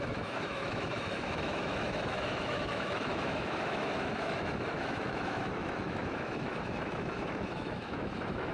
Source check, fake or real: fake